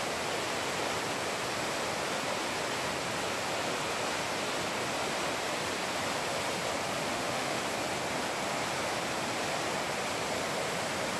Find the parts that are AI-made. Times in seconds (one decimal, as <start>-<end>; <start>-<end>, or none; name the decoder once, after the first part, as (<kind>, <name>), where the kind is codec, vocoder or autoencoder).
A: 7.1-7.6 (autoencoder, DAC-VAE)